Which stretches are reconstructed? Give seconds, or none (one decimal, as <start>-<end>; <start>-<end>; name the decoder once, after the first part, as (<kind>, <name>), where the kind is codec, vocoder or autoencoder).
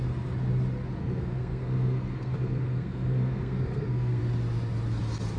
1.0-4.2 (codec, SNAC)